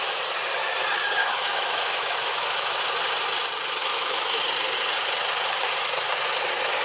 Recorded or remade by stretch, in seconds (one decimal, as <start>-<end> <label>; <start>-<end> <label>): 0.0-1.2 recorded; 1.2-2.8 remade; 2.8-3.8 recorded; 3.8-4.4 remade; 4.4-6.8 recorded